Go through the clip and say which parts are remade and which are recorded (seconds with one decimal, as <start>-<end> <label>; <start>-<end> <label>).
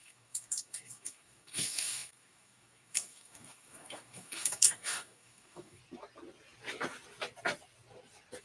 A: 0.0-5.8 remade; 5.8-8.4 recorded